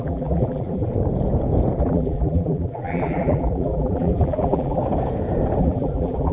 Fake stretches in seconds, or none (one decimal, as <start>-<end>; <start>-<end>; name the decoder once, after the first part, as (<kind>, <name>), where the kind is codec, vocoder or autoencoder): 0.0-0.9 (vocoder, BigVGAN v2); 1.8-4.8; 5.6-6.3